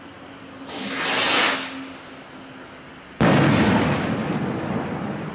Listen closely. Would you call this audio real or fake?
real